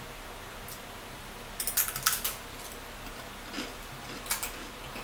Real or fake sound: fake